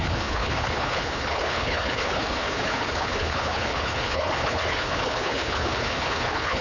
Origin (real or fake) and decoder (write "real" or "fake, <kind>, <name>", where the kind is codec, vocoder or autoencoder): fake, codec, HILCodec